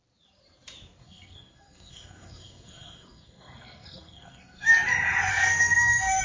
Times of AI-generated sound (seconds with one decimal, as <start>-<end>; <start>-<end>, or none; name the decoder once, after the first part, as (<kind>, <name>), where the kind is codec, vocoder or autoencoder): 1.0-4.7 (codec, SNAC); 5.3-6.2

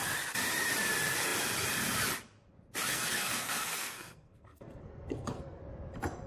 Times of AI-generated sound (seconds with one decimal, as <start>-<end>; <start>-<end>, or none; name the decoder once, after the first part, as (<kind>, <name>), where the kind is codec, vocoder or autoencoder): 2.9-5.6 (codec, SNAC)

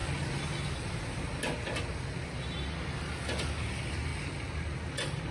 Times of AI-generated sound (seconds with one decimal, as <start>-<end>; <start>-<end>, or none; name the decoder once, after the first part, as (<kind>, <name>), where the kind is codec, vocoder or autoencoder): none

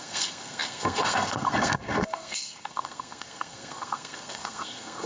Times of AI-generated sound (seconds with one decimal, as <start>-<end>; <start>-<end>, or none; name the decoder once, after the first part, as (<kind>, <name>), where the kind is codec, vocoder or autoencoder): 0.0-5.1 (codec, SNAC)

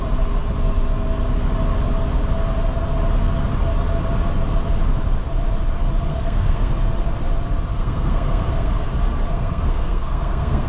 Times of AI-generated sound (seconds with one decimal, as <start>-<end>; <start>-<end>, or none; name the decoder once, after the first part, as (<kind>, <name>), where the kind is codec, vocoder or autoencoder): 6.1-6.7 (codec, SNAC); 7.7-8.9; 9.3-10.7

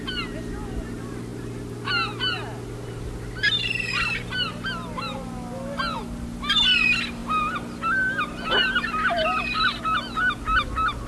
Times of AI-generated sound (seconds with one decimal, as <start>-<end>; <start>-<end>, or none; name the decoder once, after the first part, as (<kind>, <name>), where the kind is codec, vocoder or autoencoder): none

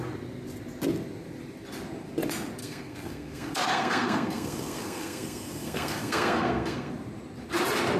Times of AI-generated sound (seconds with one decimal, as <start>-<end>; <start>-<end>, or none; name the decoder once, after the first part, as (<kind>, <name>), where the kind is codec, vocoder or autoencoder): 2.6-6.9 (codec, SNAC)

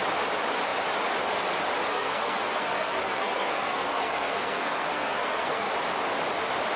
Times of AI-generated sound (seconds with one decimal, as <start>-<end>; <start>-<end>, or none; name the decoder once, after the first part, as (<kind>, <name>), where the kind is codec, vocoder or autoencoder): 1.9-5.7 (codec, SNAC)